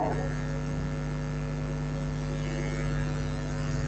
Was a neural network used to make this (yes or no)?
no